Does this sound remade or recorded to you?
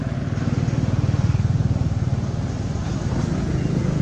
recorded